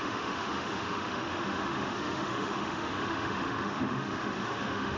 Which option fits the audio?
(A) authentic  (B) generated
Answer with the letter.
B